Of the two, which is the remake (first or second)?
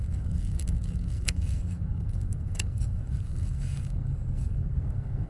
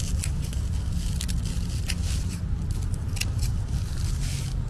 first